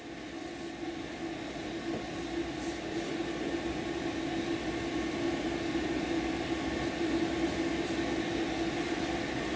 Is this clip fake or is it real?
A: real